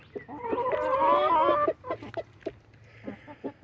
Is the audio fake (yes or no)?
no